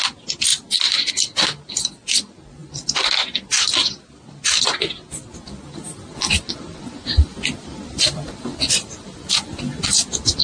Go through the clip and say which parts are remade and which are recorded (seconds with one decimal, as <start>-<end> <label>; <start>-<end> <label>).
0.0-0.5 recorded; 0.5-1.1 remade; 1.1-7.3 recorded; 7.3-9.8 remade; 9.8-10.4 recorded

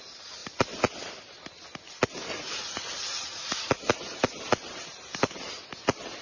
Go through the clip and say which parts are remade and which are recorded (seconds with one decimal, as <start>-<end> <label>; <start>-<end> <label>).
0.0-2.3 recorded; 2.3-3.7 remade; 3.7-6.2 recorded

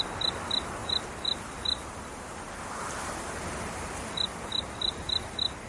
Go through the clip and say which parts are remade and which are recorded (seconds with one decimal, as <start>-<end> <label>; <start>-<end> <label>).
0.0-5.7 recorded

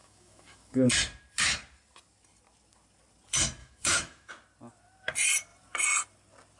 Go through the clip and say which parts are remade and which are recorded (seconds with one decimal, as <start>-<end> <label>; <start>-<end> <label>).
0.0-0.9 remade; 0.9-3.6 recorded; 3.6-4.3 remade; 4.3-6.6 recorded

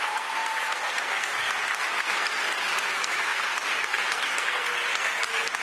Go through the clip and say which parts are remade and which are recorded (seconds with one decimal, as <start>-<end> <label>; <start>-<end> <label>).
0.0-5.6 remade

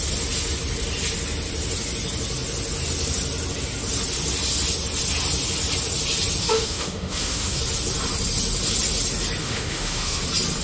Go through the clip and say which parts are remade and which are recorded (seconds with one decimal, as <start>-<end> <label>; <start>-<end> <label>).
0.0-6.4 recorded; 6.4-7.6 remade; 7.6-9.4 recorded; 9.4-10.2 remade; 10.2-10.6 recorded